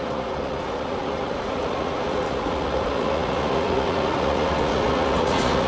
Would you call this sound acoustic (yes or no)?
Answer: no